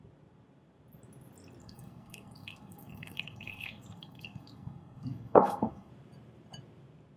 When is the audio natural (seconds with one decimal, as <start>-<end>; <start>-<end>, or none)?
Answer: 0.0-1.6; 5.9-7.2